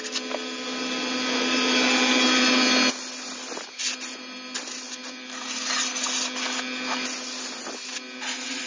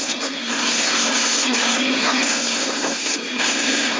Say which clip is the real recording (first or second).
first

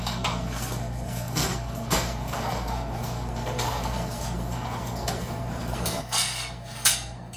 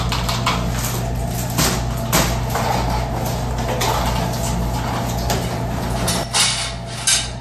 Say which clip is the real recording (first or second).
second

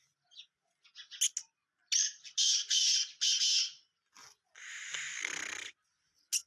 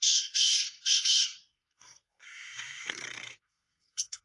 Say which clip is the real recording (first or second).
first